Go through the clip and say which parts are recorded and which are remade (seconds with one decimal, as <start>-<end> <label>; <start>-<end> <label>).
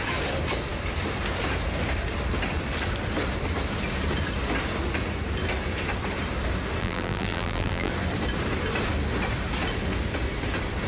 0.0-6.8 recorded; 6.8-7.9 remade; 7.9-10.9 recorded